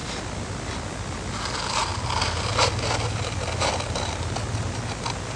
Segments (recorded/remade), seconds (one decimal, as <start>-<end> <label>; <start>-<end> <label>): 0.0-5.4 recorded